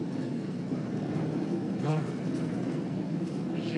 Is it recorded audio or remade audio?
remade